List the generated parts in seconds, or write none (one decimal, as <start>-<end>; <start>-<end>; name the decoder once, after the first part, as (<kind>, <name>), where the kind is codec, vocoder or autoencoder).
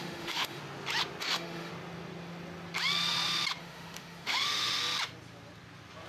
0.0-0.6 (autoencoder, DAC-VAE); 1.2-1.7; 3.6-4.8